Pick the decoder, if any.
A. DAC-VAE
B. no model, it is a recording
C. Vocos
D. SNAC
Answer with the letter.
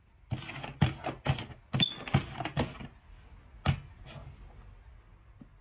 B